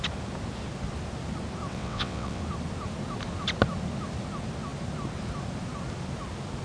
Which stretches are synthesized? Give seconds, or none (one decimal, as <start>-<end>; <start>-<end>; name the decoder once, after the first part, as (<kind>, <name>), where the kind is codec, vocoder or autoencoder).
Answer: 1.7-2.4 (vocoder, WaveNeXt)